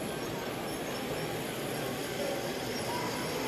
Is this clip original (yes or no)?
yes